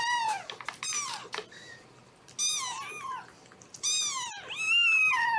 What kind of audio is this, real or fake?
real